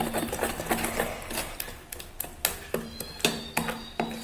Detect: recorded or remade recorded